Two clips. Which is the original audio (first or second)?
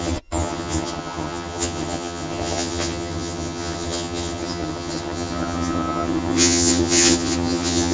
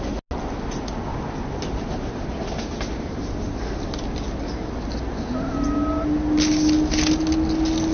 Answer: second